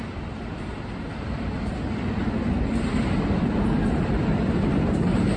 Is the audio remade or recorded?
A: remade